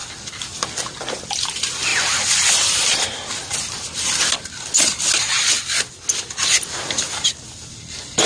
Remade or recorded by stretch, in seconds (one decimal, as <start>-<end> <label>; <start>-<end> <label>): 0.0-8.3 recorded